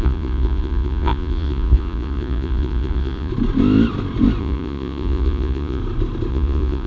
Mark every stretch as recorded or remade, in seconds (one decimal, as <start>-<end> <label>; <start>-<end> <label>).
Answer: 0.0-3.3 remade; 3.3-4.4 recorded; 4.4-5.8 remade; 5.8-6.3 recorded; 6.3-6.9 remade